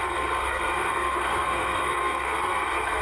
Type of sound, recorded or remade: remade